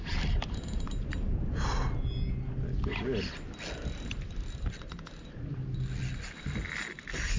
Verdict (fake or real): real